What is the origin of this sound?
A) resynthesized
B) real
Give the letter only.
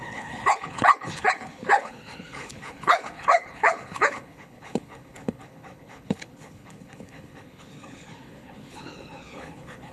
A